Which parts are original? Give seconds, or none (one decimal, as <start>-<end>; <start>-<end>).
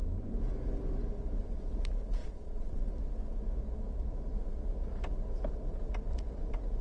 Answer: 0.0-2.2; 2.9-6.8